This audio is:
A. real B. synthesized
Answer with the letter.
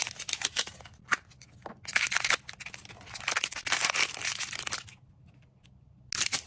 A